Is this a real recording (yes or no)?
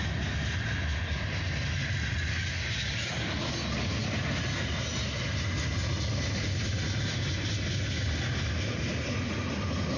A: yes